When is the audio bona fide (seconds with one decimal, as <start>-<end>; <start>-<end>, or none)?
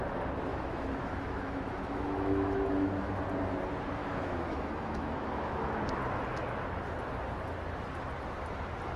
0.0-0.5; 3.2-4.0; 5.8-9.0